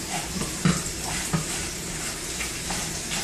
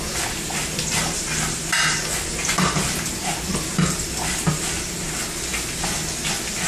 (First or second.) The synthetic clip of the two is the first